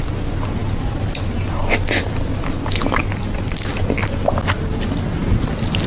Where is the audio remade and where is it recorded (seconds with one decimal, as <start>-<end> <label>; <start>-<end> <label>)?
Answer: 0.0-5.9 recorded